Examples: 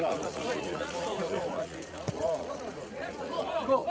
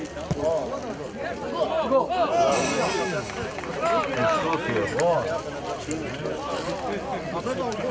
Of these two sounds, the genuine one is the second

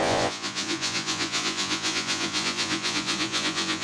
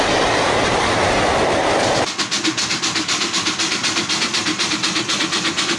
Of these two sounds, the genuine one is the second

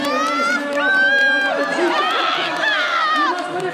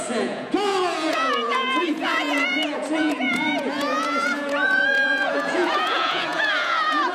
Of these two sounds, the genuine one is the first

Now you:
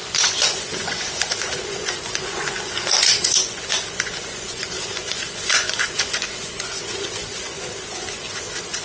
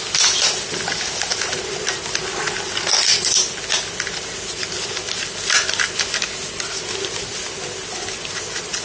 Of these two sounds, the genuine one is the second